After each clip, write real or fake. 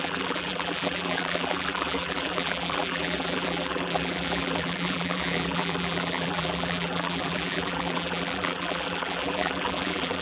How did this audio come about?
fake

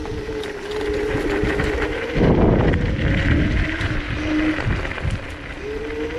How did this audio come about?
real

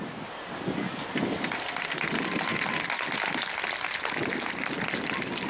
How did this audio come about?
real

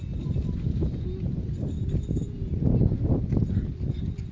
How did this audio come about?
real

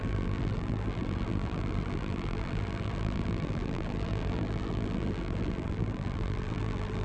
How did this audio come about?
fake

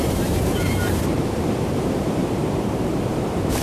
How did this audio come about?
fake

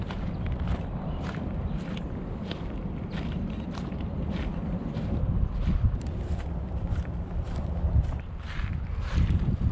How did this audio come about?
fake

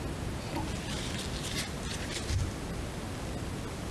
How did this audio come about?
real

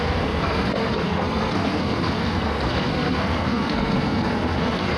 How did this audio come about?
fake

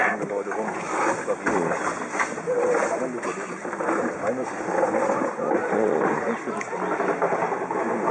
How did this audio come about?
real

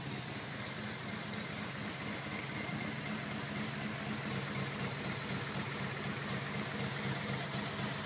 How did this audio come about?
real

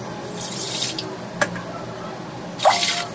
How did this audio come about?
real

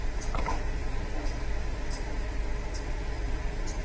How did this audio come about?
fake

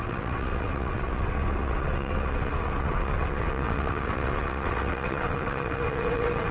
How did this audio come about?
fake